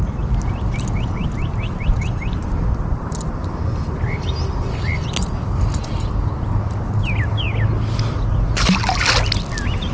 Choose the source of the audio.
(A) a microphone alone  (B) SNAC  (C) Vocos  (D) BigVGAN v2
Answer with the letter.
A